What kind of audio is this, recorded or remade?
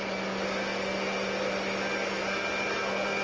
recorded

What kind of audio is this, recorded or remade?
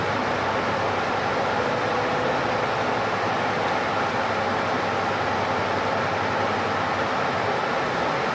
recorded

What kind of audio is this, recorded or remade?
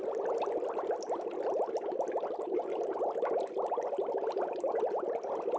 recorded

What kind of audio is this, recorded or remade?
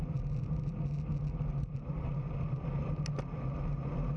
recorded